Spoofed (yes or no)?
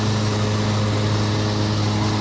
no